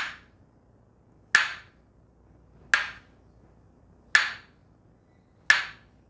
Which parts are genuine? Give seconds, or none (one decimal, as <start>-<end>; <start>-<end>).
0.0-6.1